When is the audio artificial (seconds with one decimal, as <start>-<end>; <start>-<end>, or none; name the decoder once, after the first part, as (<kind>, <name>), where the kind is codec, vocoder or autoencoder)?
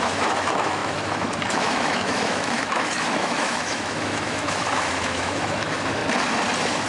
0.0-6.0 (autoencoder, DAC-VAE)